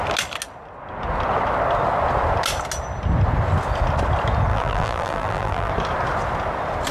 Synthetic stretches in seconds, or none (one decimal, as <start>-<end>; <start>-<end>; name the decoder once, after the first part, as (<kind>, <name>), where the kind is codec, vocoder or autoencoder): 4.5-5.7 (vocoder, BigVGAN v2)